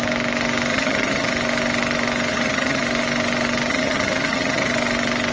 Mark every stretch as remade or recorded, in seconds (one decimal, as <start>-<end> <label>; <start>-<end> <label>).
0.0-0.7 recorded; 0.7-1.3 remade; 1.3-2.3 recorded; 2.3-2.8 remade; 2.8-3.7 recorded; 3.7-4.7 remade; 4.7-5.3 recorded